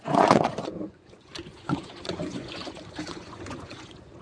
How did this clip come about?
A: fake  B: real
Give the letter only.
A